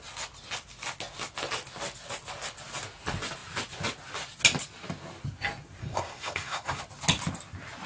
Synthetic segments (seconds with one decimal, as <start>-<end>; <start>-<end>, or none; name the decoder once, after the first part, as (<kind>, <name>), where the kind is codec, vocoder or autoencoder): 5.8-6.8 (codec, SNAC)